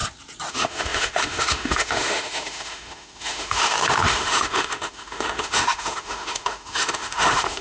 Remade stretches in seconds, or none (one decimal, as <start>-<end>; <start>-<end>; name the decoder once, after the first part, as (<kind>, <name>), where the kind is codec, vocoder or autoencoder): 0.5-7.6 (autoencoder, DAC-VAE)